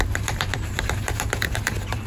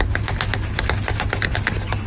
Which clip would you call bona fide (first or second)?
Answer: second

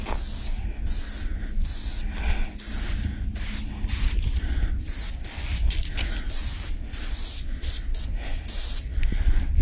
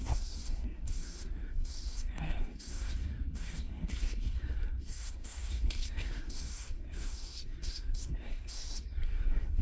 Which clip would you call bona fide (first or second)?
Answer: first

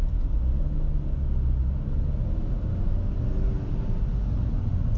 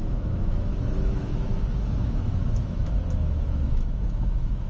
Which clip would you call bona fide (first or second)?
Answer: first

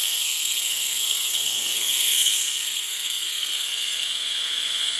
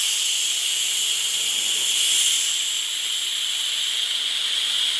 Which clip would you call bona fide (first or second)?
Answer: second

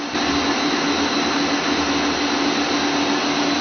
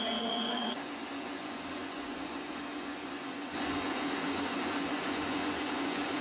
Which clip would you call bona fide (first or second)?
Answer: first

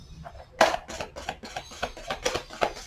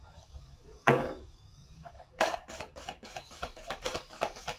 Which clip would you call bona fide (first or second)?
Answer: first